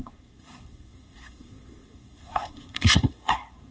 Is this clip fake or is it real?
fake